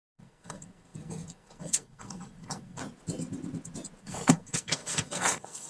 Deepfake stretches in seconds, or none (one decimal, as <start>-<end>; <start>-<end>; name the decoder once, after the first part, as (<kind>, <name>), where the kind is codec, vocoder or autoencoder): 0.0-2.8 (codec, SNAC); 4.0-5.7